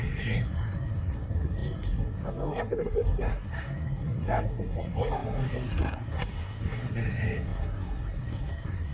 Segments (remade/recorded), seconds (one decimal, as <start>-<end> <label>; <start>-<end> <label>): 0.0-8.9 remade

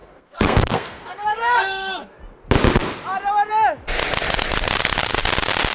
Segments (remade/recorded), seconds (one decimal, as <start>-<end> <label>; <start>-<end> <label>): 0.0-2.2 remade; 2.2-5.7 recorded

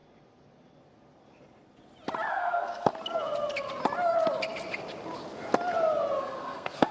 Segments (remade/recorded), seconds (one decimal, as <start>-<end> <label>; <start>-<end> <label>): 0.0-2.3 recorded; 2.3-2.9 remade; 2.9-6.2 recorded; 6.2-6.9 remade

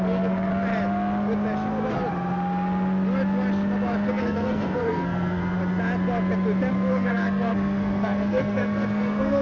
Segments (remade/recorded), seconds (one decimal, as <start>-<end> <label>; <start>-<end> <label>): 0.0-0.5 remade; 0.5-4.1 recorded; 4.1-5.4 remade; 5.4-6.7 recorded; 6.7-9.4 remade

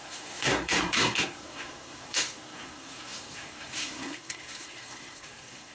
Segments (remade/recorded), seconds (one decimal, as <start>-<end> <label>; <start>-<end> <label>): 0.0-5.7 remade

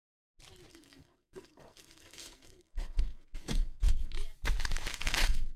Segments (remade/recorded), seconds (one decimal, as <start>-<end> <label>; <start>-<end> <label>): 0.0-0.7 recorded; 0.7-4.1 remade; 4.1-4.9 recorded; 4.9-5.6 remade